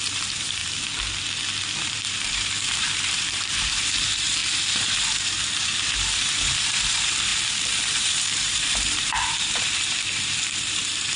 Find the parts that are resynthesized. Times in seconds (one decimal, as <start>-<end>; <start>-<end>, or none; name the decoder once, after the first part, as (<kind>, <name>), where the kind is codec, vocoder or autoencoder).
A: 0.0-0.6 (vocoder, BigVGAN v2); 1.8-11.2